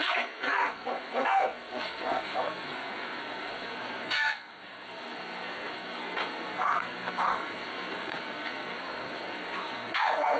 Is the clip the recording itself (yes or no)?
no